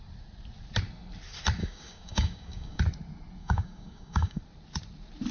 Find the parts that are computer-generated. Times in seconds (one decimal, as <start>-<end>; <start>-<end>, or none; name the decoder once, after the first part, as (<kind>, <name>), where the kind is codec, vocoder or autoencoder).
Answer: 1.6-2.8 (codec, DAC); 3.4-4.4